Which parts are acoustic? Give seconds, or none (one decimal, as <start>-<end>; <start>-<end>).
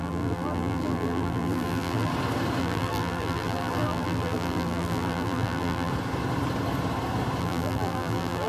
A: 2.1-2.6; 5.9-7.4